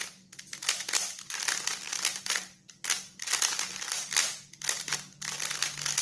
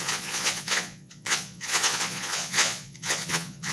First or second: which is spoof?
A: second